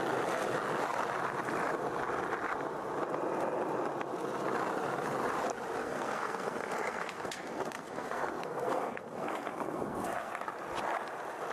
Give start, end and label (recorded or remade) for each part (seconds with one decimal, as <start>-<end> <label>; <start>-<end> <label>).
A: 0.0-5.8 recorded; 5.8-10.3 remade; 10.3-11.5 recorded

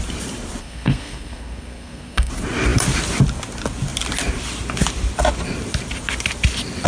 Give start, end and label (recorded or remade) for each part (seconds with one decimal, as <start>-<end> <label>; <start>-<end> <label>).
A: 0.0-0.6 recorded; 0.6-2.3 remade; 2.3-6.9 recorded

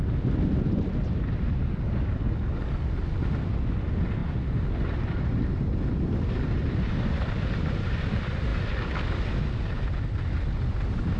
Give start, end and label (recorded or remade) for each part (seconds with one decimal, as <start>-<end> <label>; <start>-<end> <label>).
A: 0.0-1.6 recorded; 1.6-2.6 remade; 2.6-11.2 recorded

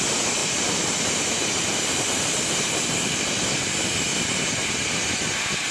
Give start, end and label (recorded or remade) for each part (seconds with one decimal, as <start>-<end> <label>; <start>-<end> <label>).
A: 0.0-0.4 recorded; 0.4-3.6 remade; 3.6-4.1 recorded; 4.1-5.0 remade; 5.0-5.7 recorded

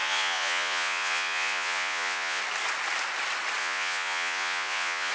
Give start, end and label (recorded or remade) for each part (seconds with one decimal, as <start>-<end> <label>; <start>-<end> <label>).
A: 0.0-2.4 remade; 2.4-3.6 recorded; 3.6-5.1 remade

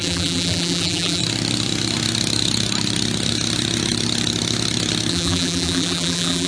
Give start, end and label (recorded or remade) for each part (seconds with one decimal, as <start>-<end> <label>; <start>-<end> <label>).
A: 0.0-1.2 remade; 1.2-5.1 recorded; 5.1-6.5 remade

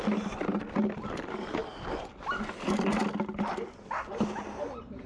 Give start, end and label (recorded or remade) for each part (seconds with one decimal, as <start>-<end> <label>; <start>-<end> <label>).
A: 0.0-5.1 recorded

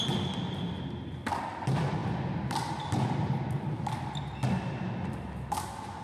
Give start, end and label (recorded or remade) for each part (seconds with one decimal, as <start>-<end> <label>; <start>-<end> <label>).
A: 0.0-6.0 recorded